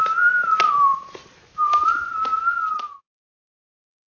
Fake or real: real